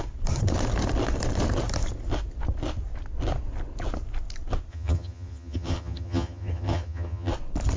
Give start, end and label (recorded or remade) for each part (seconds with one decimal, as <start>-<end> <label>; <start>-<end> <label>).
0.0-4.7 recorded; 4.7-7.3 remade; 7.3-7.8 recorded